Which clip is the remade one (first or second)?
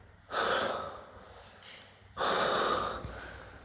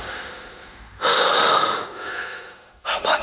second